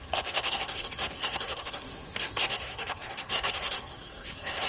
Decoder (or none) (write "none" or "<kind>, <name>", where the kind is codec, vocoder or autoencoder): codec, SNAC